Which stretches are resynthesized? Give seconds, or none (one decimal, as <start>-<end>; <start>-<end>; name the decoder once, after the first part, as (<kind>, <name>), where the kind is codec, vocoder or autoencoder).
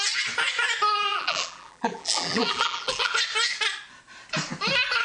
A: 1.1-3.1 (vocoder, BigVGAN v2)